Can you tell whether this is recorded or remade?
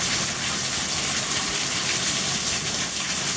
recorded